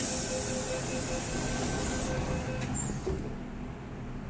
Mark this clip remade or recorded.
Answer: recorded